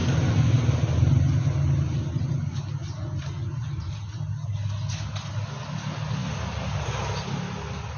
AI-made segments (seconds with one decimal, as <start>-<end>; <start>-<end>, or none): none